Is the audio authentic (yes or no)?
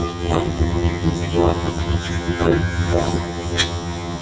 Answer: no